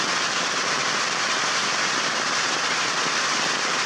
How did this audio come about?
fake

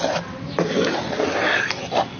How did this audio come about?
real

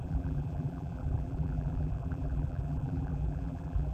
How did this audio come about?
fake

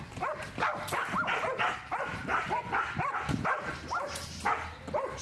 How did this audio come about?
real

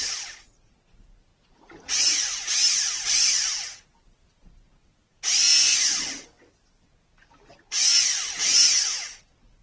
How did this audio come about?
real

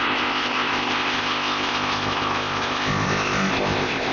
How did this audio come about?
fake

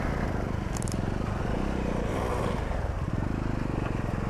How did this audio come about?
real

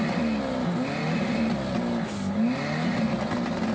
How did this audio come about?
real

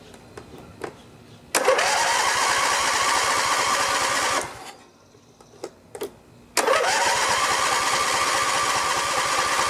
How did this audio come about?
real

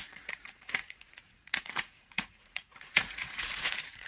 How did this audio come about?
fake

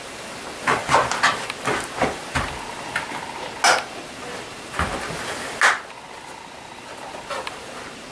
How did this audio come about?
real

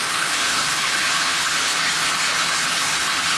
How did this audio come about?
fake